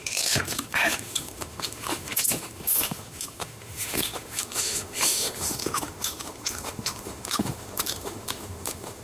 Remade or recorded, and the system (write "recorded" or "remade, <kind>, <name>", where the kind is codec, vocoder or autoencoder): remade, autoencoder, DAC-VAE